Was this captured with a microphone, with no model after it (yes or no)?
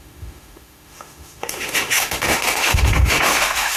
no